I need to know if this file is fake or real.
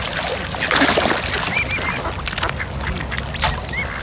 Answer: real